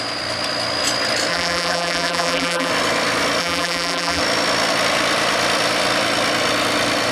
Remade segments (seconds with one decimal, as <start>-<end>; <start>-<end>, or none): 1.3-2.7; 3.4-4.2

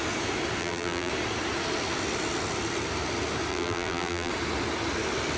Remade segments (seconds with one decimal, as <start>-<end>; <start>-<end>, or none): 0.6-1.1; 3.5-4.3

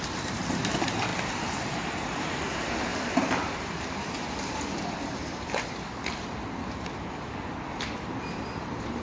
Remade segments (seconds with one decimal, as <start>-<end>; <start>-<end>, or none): 0.0-9.0

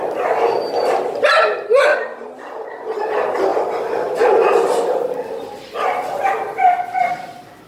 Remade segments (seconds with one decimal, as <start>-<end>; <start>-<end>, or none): 0.0-1.9; 3.0-3.5; 4.2-7.7

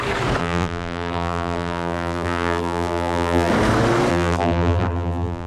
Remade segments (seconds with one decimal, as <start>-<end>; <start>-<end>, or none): 0.4-3.5; 4.1-5.5

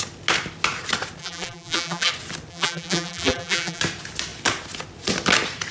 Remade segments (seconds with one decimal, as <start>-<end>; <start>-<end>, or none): 1.2-2.1; 2.5-3.8

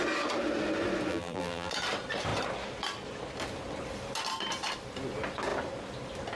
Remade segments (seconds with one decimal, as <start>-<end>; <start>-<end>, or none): 1.1-1.7